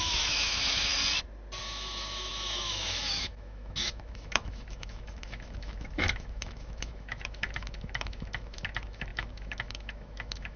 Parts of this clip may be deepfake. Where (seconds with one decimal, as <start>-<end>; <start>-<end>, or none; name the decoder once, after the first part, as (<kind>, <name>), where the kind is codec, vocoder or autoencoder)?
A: 0.0-0.9 (autoencoder, DAC-VAE); 1.6-10.6